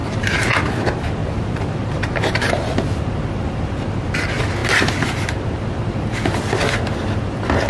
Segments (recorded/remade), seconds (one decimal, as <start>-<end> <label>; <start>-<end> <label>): 0.0-0.6 remade; 0.6-1.2 recorded; 1.2-2.7 remade; 2.7-7.7 recorded